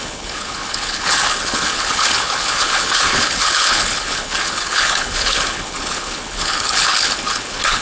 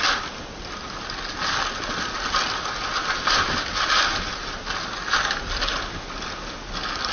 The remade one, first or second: first